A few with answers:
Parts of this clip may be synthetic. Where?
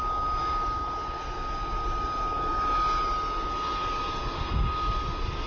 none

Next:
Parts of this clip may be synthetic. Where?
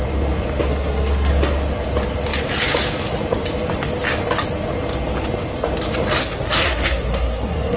0.7-1.3; 6.2-7.8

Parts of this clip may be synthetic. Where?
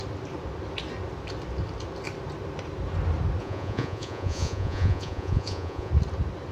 3.4-5.9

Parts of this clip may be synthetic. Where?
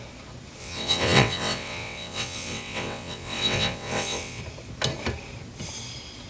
0.6-4.4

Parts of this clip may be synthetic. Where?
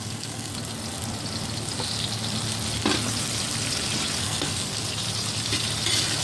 0.0-0.5; 4.2-4.7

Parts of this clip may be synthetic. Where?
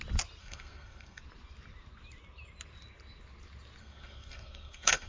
0.4-1.2; 3.8-5.1